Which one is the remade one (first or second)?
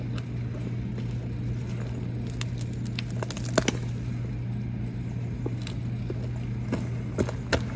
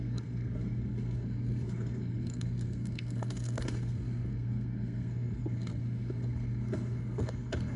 second